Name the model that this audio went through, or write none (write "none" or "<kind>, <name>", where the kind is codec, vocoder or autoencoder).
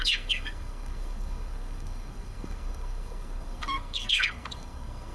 codec, SNAC